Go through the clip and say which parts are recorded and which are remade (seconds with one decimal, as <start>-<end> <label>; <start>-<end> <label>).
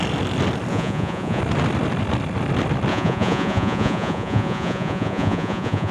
0.0-0.7 recorded; 0.7-1.4 remade; 1.4-2.9 recorded; 2.9-5.9 remade